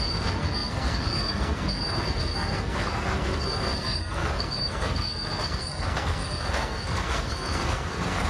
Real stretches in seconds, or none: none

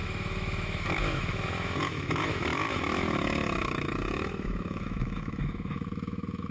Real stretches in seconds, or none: none

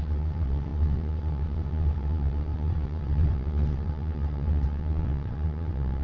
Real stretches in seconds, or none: none

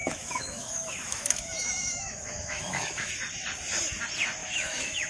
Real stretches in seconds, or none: 3.1-4.4

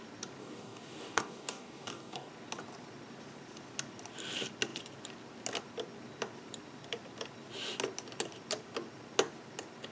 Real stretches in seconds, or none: 0.0-0.4; 2.3-9.9

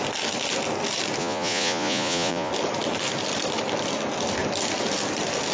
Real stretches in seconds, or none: 0.0-1.2; 2.5-5.5

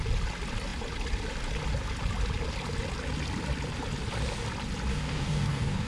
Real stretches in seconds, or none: 0.0-4.9

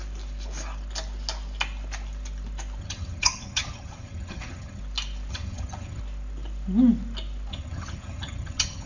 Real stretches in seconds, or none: 0.0-2.8; 4.8-5.3; 6.0-7.5